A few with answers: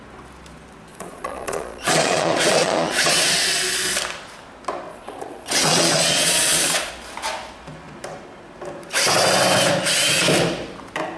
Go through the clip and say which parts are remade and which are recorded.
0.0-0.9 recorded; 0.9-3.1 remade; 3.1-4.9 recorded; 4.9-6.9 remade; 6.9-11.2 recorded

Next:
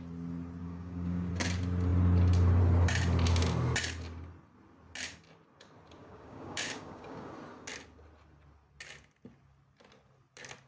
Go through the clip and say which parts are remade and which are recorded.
0.0-0.6 recorded; 0.6-1.3 remade; 1.3-6.0 recorded; 6.0-7.3 remade; 7.3-10.7 recorded

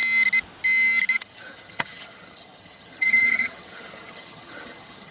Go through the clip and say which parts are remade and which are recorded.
0.0-1.2 recorded; 1.2-5.1 remade

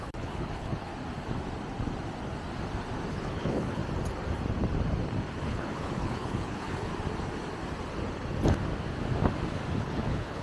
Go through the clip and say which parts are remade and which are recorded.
0.0-0.9 remade; 0.9-3.1 recorded; 3.1-3.8 remade; 3.8-5.4 recorded; 5.4-6.9 remade; 6.9-9.8 recorded; 9.8-10.4 remade

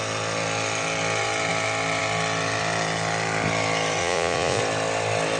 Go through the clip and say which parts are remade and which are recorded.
0.0-4.0 recorded; 4.0-4.6 remade; 4.6-5.4 recorded

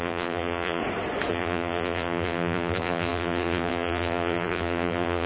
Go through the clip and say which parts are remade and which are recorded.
0.0-0.8 remade; 0.8-1.3 recorded; 1.3-5.3 remade

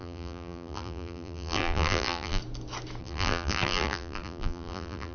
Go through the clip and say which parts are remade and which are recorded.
0.0-2.4 remade; 2.4-3.0 recorded; 3.0-5.1 remade